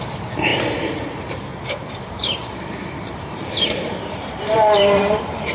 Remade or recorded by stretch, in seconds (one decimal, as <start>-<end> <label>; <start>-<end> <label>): 0.0-5.5 remade